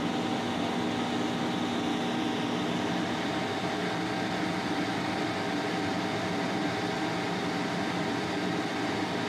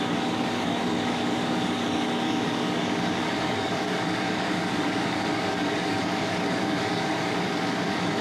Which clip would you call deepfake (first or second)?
second